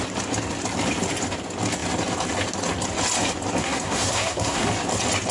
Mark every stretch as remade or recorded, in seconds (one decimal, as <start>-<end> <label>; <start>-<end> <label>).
0.0-3.6 recorded; 3.6-4.7 remade; 4.7-5.3 recorded